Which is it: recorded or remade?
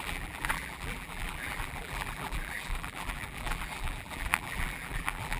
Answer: remade